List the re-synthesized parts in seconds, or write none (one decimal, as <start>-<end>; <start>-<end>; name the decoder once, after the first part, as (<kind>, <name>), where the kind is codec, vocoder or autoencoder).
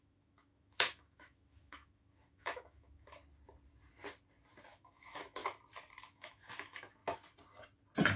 0.0-3.2 (autoencoder, DAC-VAE); 4.7-5.4; 6.0-7.0